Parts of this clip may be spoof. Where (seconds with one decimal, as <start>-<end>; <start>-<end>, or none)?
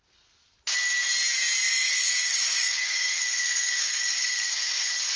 1.6-4.7